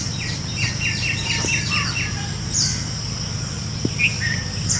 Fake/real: real